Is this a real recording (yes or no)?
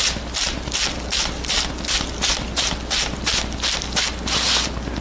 yes